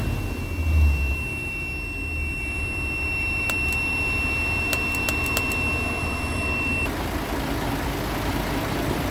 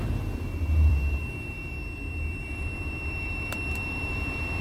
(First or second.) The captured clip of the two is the first